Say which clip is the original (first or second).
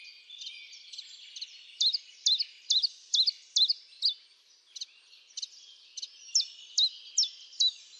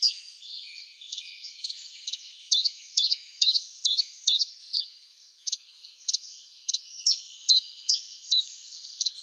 first